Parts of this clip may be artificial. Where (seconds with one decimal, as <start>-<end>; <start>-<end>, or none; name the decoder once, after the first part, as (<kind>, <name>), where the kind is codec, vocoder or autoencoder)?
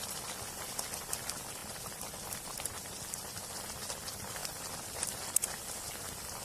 none